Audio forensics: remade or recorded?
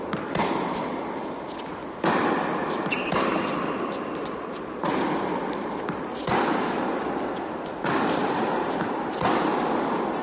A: remade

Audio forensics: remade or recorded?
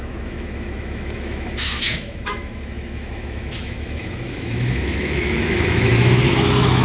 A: remade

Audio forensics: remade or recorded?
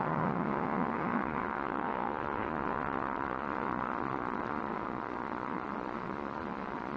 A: remade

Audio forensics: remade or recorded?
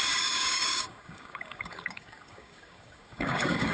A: remade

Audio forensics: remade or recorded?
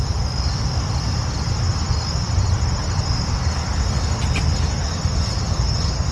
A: recorded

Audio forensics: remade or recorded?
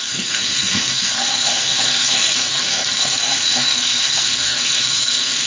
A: remade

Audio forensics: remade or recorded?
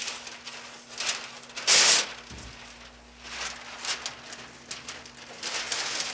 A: recorded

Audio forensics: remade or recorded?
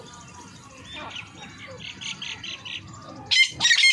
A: recorded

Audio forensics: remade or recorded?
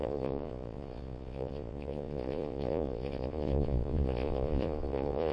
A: remade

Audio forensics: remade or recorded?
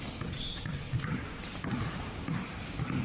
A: recorded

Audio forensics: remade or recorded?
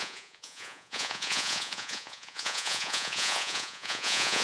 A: remade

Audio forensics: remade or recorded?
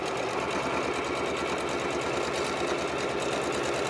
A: recorded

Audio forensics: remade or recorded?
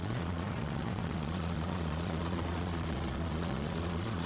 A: remade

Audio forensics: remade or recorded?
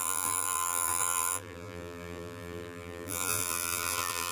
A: remade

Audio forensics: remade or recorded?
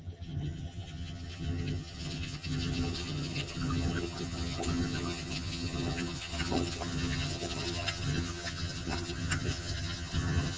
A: remade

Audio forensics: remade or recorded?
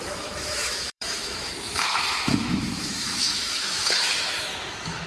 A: remade